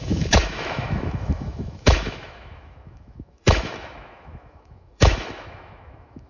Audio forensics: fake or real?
fake